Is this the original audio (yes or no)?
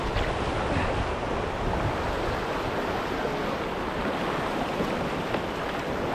yes